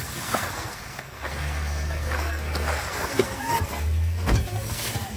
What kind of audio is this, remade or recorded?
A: remade